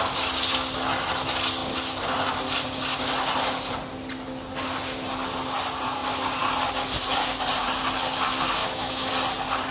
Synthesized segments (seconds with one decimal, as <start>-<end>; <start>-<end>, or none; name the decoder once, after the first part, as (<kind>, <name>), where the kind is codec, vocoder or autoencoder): 8.6-9.1 (autoencoder, DAC-VAE)